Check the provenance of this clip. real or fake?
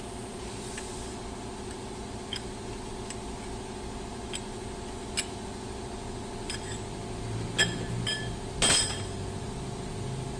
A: real